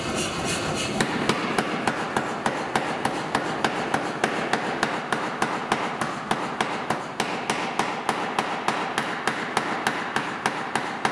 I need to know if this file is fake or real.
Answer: real